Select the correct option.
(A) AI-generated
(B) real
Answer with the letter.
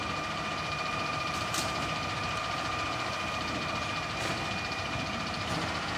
A